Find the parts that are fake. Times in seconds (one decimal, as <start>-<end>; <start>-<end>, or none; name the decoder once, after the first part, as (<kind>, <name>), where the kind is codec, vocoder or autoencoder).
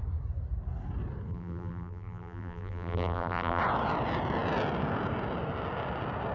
1.3-3.6 (vocoder, BigVGAN v2)